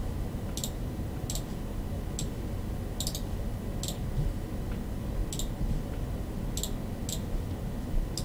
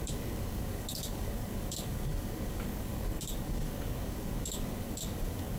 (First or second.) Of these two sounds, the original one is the first